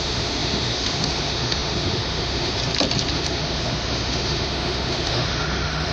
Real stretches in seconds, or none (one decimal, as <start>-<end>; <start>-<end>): 2.6-3.1